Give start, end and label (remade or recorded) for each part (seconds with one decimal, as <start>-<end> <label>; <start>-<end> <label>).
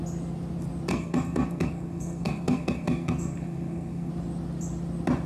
0.0-0.9 recorded; 0.9-4.1 remade; 4.1-5.3 recorded